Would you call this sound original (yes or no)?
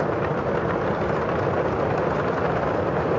yes